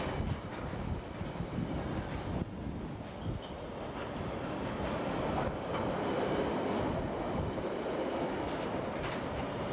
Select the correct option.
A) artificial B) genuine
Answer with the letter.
B